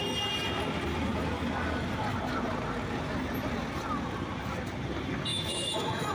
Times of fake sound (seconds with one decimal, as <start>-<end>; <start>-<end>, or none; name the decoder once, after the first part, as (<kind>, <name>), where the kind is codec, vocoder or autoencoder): 5.3-6.1 (autoencoder, DAC-VAE)